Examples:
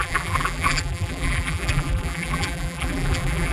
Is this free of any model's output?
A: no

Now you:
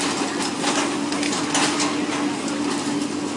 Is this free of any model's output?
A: yes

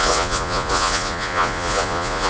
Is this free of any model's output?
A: no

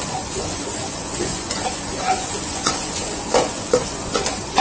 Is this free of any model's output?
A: no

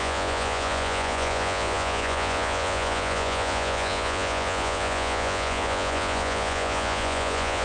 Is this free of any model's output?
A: no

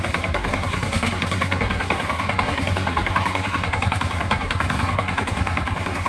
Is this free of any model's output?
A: no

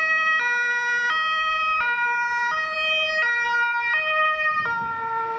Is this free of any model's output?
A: yes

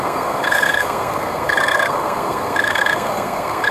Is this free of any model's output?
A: no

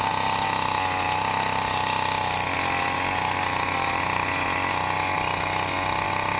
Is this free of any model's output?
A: yes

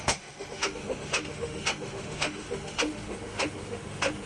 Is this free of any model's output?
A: no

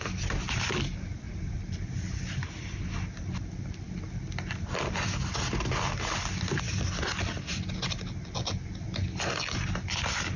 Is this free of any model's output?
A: yes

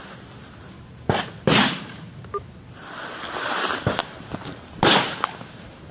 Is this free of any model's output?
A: yes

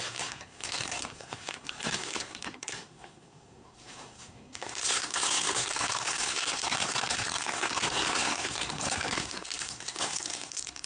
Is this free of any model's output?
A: no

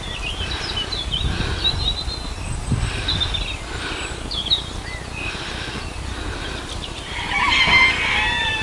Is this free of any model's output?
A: yes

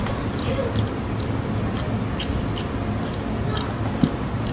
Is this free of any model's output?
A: yes